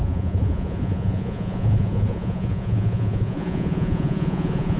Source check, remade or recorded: remade